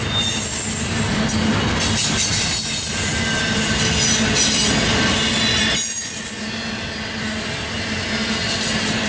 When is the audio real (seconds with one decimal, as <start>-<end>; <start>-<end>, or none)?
0.0-9.1